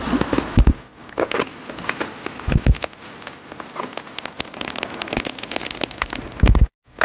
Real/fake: real